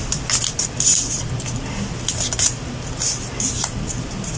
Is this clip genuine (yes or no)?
yes